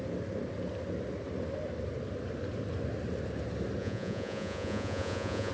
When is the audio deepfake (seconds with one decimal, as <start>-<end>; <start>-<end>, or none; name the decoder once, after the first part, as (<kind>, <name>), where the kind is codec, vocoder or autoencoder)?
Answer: 3.8-5.5 (vocoder, Vocos)